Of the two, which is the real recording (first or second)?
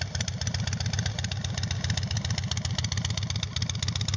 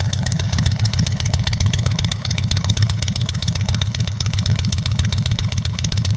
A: first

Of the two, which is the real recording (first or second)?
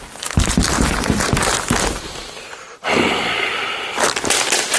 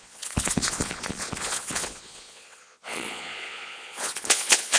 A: first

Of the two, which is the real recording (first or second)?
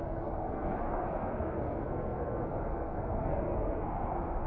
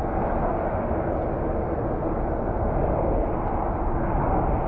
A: second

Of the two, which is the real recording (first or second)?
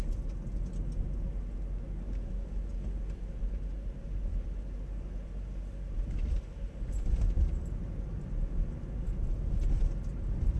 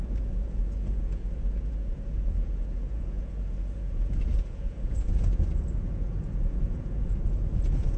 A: first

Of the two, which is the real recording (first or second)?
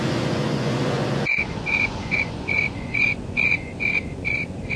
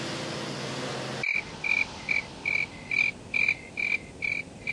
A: second